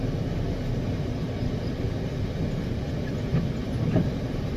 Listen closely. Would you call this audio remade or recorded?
recorded